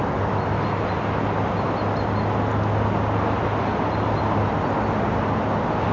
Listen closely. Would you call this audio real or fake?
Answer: real